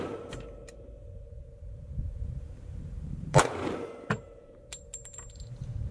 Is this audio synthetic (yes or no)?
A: yes